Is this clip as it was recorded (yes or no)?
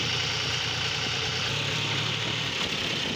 no